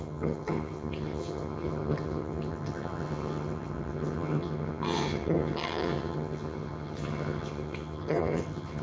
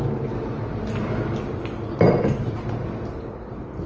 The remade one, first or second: first